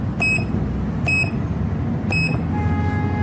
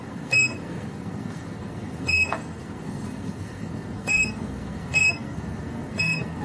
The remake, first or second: second